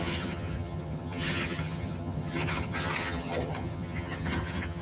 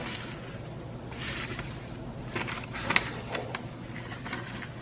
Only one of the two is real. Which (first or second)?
second